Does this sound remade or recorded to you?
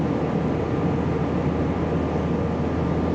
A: recorded